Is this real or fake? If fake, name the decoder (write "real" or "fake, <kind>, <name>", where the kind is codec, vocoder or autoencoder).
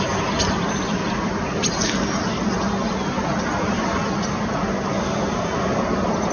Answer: real